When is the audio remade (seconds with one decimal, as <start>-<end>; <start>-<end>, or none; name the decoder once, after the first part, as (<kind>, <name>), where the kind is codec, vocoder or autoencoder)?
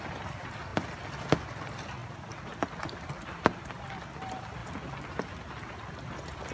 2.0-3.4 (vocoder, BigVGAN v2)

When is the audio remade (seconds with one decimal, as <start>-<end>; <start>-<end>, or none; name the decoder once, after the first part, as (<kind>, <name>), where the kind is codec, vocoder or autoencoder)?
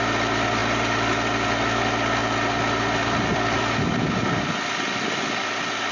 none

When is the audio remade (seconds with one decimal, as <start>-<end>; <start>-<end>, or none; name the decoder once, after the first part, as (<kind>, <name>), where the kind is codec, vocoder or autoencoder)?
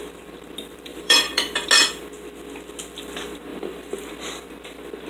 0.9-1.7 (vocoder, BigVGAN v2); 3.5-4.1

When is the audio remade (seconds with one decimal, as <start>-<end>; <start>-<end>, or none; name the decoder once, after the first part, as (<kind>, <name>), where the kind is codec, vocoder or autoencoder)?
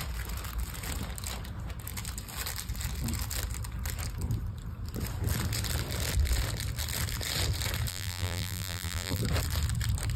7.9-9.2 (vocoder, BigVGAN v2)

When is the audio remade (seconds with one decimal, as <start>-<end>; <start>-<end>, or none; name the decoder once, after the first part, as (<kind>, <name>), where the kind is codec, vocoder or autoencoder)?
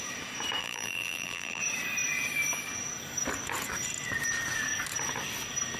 0.6-1.6 (vocoder, BigVGAN v2)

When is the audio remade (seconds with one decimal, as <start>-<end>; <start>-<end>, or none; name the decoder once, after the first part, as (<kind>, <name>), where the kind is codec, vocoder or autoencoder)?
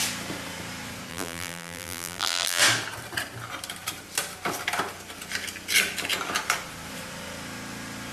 1.1-2.6 (vocoder, BigVGAN v2)